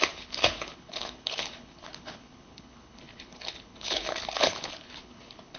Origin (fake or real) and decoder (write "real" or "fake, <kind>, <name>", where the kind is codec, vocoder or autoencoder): fake, codec, HILCodec